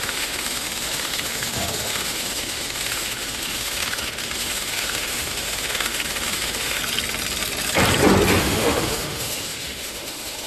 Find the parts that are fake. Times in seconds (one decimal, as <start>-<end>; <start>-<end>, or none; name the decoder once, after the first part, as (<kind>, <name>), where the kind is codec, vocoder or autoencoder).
0.0-6.8 (autoencoder, DAC-VAE); 8.4-10.5